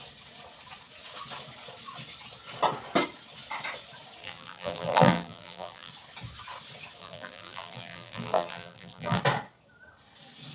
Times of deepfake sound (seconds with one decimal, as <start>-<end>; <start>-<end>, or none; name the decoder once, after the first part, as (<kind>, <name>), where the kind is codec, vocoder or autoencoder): 4.2-5.9 (vocoder, BigVGAN v2); 7.0-9.2